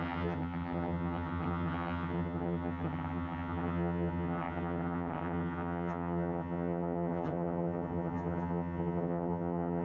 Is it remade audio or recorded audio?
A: remade